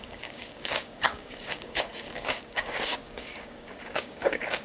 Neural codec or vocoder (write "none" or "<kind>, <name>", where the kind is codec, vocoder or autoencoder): codec, DAC